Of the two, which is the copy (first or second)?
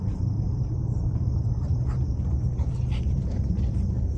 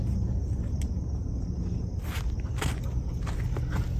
first